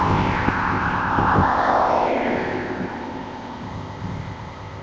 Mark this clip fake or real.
fake